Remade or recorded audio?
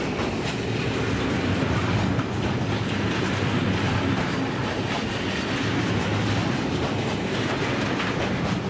recorded